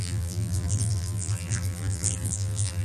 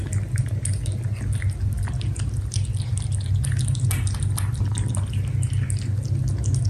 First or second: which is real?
second